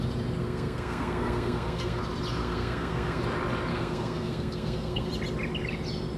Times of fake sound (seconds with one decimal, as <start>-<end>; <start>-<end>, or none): 0.4-2.0; 2.4-3.2; 3.7-5.1